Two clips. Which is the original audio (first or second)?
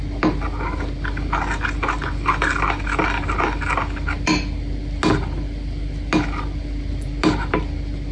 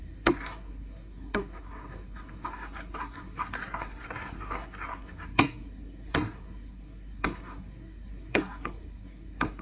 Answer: first